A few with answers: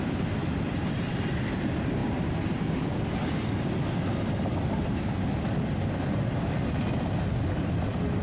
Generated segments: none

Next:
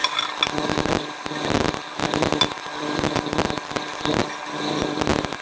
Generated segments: none

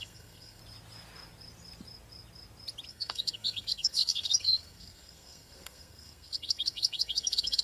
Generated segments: 0.0-0.6 (codec, SNAC); 2.9-7.6

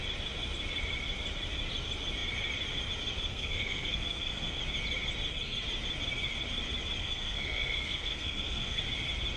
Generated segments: 3.3-4.6 (codec, SNAC); 7.0-8.8